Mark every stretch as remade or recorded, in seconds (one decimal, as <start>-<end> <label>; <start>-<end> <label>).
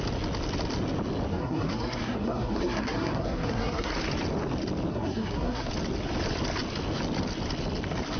0.0-1.3 recorded; 1.3-3.9 remade; 3.9-4.9 recorded; 4.9-5.7 remade; 5.7-8.2 recorded